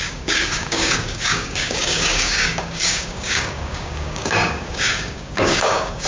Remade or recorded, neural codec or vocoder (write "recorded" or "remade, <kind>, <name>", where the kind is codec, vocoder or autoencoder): remade, codec, DAC